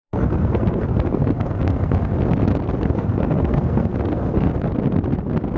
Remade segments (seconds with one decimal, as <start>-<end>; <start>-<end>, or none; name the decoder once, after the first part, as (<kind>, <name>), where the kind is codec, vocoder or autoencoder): 0.0-2.1 (codec, SNAC); 2.9-4.5